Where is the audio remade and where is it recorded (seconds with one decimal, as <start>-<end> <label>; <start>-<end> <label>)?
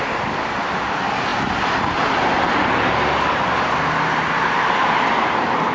0.0-5.7 recorded